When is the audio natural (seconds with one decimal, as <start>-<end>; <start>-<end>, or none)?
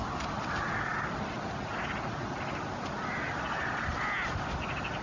0.0-5.0